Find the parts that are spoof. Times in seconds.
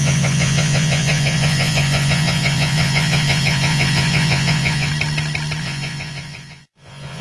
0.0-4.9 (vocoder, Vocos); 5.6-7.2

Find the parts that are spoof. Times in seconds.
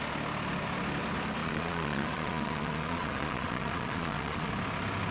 1.4-4.5 (vocoder, Vocos)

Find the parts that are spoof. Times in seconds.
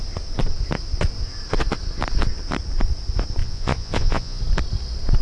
3.4-4.4 (vocoder, Vocos)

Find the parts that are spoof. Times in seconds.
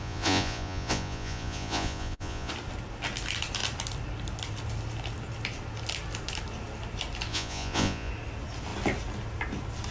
0.0-2.5 (vocoder, Vocos); 7.3-8.1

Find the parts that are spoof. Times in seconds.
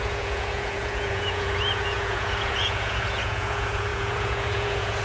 0.0-5.0 (vocoder, Vocos)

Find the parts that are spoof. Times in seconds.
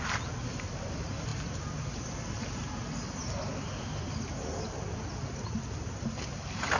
none